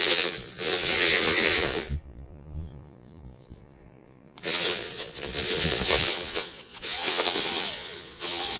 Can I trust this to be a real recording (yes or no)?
no